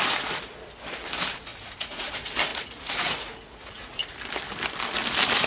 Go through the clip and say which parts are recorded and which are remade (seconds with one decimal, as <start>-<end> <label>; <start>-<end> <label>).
0.0-1.5 recorded; 1.5-2.1 remade; 2.1-2.5 recorded; 2.5-4.1 remade; 4.1-5.5 recorded